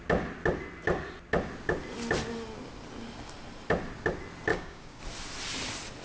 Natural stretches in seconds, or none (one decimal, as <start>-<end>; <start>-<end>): 0.0-4.5; 5.0-6.0